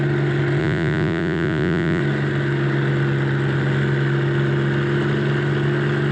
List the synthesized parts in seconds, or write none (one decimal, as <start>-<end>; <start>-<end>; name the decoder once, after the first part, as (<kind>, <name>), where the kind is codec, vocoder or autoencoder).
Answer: 0.6-2.0 (vocoder, Vocos)